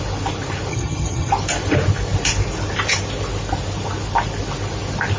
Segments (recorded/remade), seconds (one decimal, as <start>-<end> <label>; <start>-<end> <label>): 0.0-0.7 recorded; 0.7-1.3 remade; 1.3-5.2 recorded